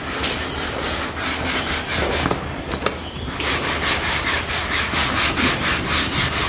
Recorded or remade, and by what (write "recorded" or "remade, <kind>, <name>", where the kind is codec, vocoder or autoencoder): recorded